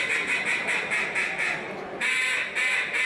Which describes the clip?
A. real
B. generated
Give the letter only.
A